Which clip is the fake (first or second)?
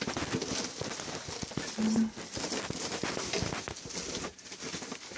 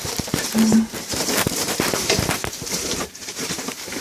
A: second